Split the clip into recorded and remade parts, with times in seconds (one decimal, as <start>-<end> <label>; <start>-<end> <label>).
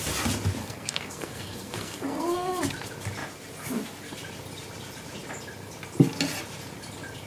0.0-0.6 recorded; 0.6-2.6 remade; 2.6-7.3 recorded